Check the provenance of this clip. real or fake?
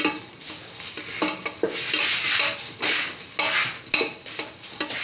real